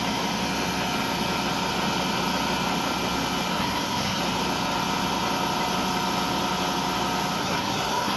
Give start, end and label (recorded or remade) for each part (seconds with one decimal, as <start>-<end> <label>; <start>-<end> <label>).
0.0-3.5 recorded; 3.5-4.2 remade; 4.2-7.4 recorded; 7.4-8.2 remade